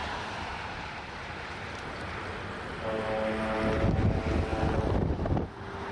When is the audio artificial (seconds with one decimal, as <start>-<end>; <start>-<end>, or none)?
0.0-2.1

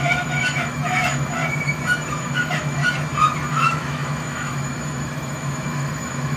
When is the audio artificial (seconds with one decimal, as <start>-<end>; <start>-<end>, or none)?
0.0-1.4; 2.2-2.8; 3.5-6.4